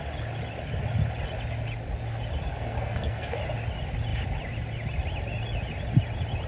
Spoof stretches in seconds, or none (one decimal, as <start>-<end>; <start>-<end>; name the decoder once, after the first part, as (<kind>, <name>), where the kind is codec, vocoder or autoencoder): 2.5-3.4 (codec, SNAC)